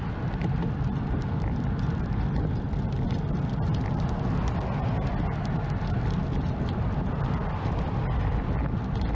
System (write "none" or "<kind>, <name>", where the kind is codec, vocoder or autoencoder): none